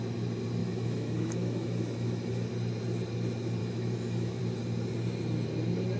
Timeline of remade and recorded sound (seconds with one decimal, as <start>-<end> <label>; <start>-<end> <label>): 0.0-0.6 recorded; 0.6-2.5 remade; 2.5-3.6 recorded; 3.6-4.4 remade; 4.4-6.0 recorded